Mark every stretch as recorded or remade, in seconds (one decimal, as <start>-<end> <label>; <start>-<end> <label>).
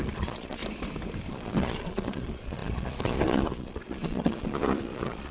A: 0.0-0.6 remade; 0.6-1.3 recorded; 1.3-5.3 remade